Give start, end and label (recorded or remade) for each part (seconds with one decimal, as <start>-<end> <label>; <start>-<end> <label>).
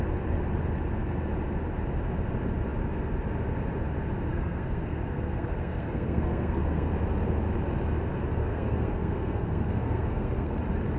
0.0-4.3 recorded; 4.3-6.9 remade; 6.9-8.4 recorded; 8.4-10.6 remade; 10.6-11.0 recorded